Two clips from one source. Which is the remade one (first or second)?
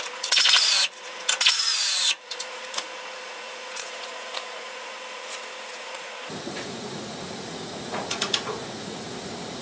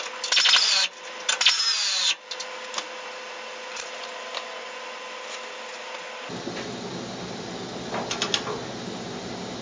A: first